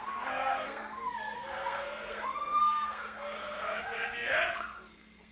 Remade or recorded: remade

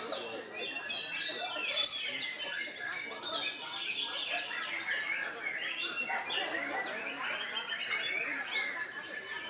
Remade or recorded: recorded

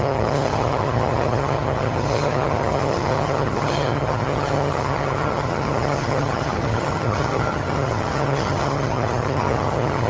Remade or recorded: remade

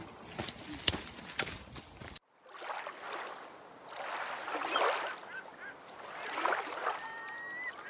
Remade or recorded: recorded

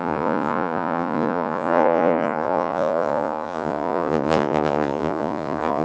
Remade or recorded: remade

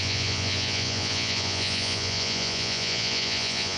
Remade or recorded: remade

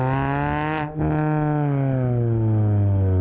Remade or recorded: recorded